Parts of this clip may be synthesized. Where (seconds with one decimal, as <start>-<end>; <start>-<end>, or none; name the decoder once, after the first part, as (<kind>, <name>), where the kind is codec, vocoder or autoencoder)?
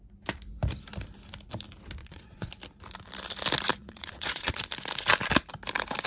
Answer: 2.0-2.5 (vocoder, Vocos); 3.7-4.6